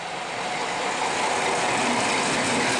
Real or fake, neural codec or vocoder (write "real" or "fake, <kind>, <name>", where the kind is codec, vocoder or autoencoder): real